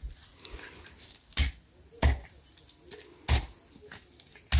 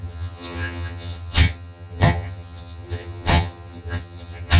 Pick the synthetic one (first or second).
second